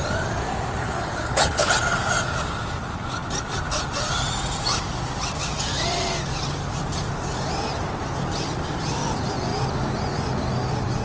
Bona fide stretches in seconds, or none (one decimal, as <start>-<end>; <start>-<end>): 0.0-0.8; 1.7-11.0